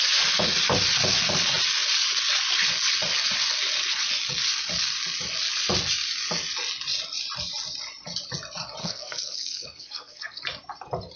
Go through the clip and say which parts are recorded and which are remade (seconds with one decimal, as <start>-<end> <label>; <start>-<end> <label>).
0.0-8.8 recorded; 8.8-10.4 remade; 10.4-11.2 recorded